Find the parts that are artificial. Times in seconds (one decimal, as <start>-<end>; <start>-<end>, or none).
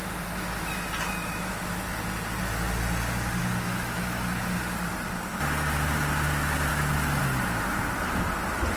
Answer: 1.2-1.7; 3.4-4.4; 6.7-7.2